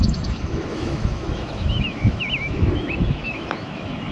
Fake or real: fake